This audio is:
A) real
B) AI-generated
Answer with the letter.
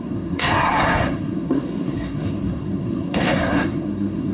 B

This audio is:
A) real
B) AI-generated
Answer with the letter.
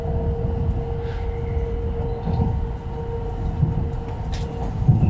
A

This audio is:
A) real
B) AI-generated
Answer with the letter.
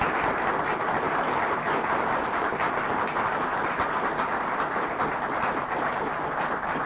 A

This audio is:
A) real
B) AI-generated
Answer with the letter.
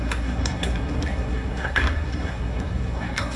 B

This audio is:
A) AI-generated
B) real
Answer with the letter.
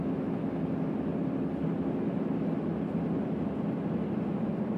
B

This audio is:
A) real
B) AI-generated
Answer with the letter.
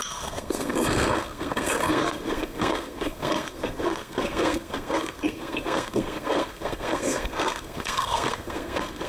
B